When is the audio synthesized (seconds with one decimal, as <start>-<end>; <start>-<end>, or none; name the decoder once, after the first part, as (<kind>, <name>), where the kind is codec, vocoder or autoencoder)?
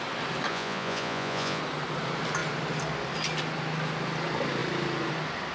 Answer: 0.5-1.6 (vocoder, Vocos)